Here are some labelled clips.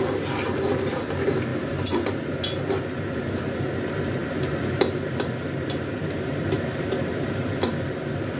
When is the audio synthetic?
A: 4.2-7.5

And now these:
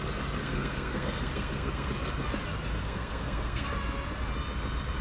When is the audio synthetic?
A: 0.4-1.9; 2.8-3.7

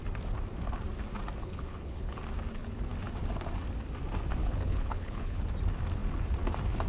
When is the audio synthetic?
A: 1.4-2.2; 4.4-5.5

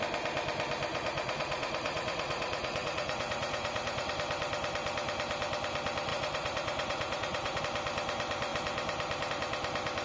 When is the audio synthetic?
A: 0.9-4.1; 6.1-7.6

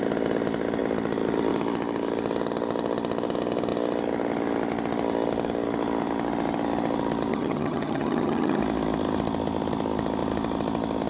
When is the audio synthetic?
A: 7.3-8.6

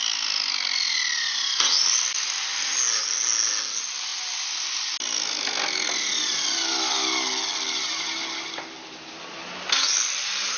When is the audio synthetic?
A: none